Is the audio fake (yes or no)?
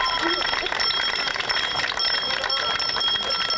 no